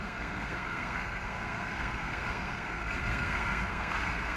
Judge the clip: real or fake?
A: fake